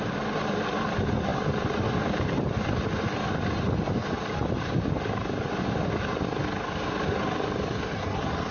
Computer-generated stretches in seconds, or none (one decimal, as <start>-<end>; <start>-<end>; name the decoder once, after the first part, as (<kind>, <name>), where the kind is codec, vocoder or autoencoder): none